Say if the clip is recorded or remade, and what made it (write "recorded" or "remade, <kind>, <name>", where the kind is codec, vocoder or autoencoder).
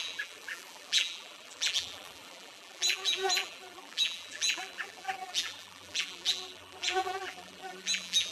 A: remade, vocoder, BigVGAN v2